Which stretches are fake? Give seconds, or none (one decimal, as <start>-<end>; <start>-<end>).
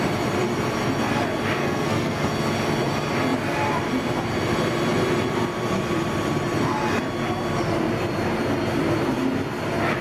1.6-2.3